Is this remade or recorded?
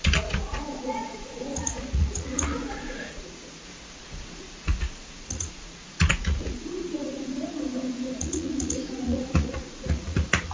remade